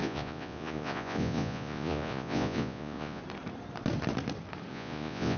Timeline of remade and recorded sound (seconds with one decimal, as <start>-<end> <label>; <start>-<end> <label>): 0.0-3.2 remade; 3.2-4.7 recorded; 4.7-5.4 remade